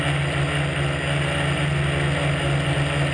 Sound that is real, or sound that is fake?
real